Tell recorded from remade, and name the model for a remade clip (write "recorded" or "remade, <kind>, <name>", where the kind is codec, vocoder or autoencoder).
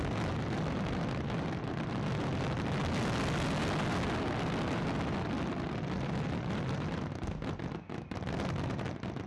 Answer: recorded